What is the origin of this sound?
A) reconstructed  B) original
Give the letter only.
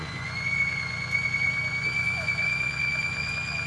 A